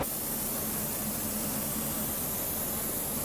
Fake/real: real